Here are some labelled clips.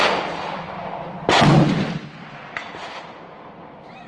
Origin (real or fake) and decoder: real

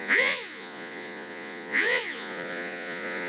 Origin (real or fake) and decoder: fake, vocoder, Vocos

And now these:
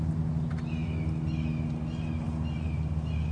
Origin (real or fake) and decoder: real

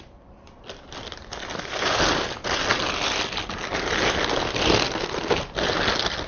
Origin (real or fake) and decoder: real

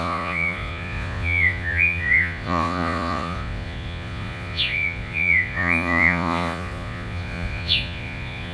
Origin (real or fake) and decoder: fake, vocoder, Vocos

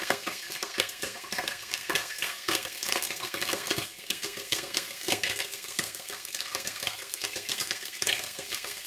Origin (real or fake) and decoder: fake, codec, SNAC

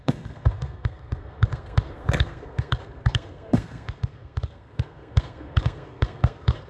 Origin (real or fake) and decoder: fake, codec, SNAC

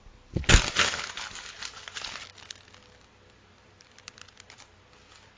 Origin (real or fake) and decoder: real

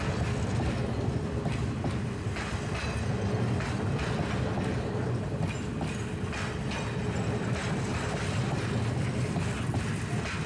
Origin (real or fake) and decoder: real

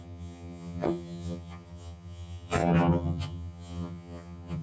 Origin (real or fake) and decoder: fake, vocoder, HiFi-GAN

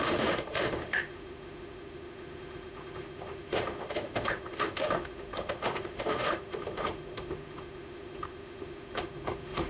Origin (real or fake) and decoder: fake, autoencoder, DAC-VAE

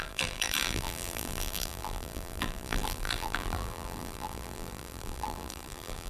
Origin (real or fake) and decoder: fake, vocoder, BigVGAN v2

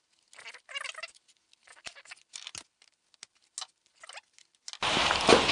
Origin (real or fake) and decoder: real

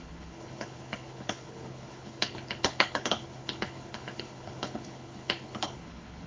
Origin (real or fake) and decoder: fake, codec, HILCodec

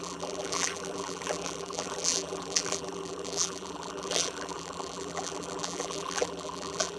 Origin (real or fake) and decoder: fake, vocoder, BigVGAN v2